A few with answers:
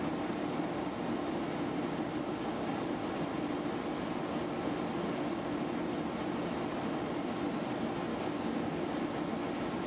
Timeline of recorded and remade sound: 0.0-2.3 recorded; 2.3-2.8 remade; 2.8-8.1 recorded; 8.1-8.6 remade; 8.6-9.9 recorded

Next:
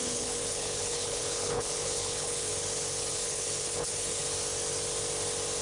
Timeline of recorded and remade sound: 0.0-2.5 remade; 2.5-3.1 recorded; 3.1-4.2 remade; 4.2-5.6 recorded

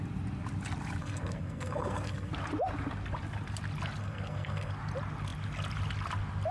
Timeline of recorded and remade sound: 0.0-1.0 recorded; 1.0-2.3 remade; 2.3-4.0 recorded; 4.0-4.7 remade; 4.7-6.5 recorded

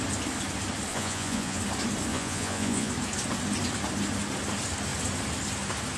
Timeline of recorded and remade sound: 0.0-0.9 recorded; 0.9-1.6 remade; 1.6-2.1 recorded; 2.1-2.9 remade; 2.9-6.0 recorded

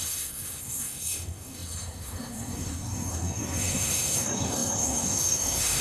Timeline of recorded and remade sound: 0.0-5.8 remade

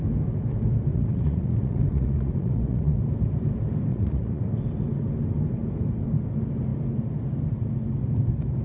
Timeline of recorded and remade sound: 0.0-0.9 recorded; 0.9-3.0 remade; 3.0-3.9 recorded; 3.9-4.4 remade; 4.4-8.6 recorded